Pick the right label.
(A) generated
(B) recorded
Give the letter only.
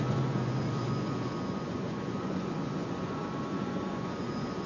A